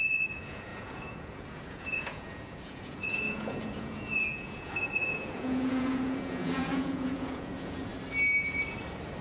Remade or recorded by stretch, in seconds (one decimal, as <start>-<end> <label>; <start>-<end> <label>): 0.0-7.9 remade; 7.9-9.2 recorded